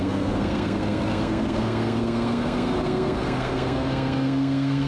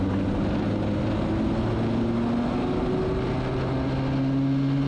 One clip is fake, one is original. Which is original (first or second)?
second